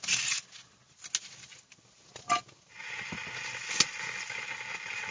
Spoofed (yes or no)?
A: no